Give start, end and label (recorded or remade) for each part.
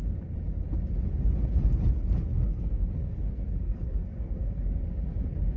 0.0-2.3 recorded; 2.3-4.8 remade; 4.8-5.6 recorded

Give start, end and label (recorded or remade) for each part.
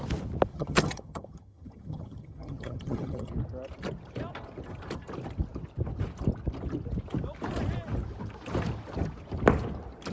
0.0-0.5 recorded; 0.5-3.3 remade; 3.3-10.1 recorded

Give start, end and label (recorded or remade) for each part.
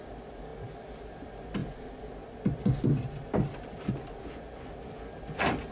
0.0-5.7 recorded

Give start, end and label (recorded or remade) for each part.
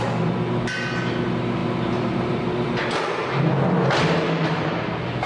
0.0-5.3 recorded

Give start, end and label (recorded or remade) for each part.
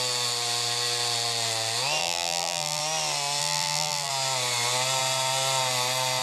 0.0-2.0 recorded; 2.0-2.8 remade; 2.8-3.4 recorded; 3.4-4.1 remade; 4.1-6.2 recorded